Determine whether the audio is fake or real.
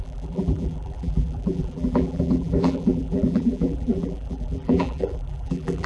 fake